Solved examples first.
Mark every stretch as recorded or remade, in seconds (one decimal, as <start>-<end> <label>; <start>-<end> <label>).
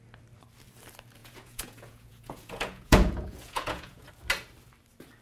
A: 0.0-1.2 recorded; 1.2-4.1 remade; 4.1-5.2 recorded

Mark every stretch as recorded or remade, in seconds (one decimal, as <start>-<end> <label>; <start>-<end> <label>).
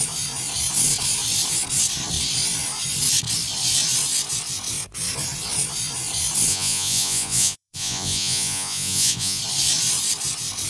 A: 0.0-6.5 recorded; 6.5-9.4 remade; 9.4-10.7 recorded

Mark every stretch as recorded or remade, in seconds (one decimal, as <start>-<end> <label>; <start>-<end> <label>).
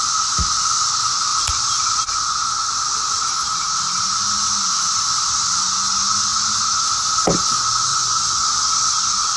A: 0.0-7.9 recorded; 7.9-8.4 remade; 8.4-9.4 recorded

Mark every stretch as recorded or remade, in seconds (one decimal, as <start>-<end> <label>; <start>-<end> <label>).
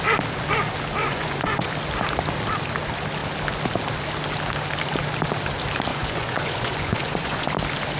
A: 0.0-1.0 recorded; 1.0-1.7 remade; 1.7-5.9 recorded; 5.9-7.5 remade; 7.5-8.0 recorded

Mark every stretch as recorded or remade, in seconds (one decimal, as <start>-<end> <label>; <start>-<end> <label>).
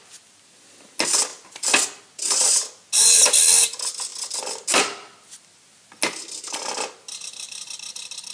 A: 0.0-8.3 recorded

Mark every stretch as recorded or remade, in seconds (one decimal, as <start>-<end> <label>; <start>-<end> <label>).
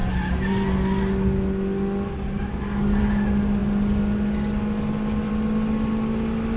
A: 0.0-6.6 recorded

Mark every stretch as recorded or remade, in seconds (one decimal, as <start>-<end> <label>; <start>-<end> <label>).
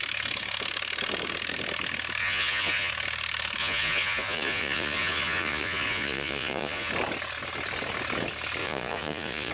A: 0.0-2.2 recorded; 2.2-2.9 remade; 2.9-3.6 recorded; 3.6-6.9 remade; 6.9-8.6 recorded; 8.6-9.5 remade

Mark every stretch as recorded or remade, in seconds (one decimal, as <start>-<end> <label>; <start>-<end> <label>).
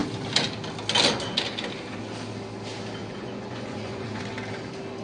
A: 0.0-3.0 recorded; 3.0-4.2 remade; 4.2-5.0 recorded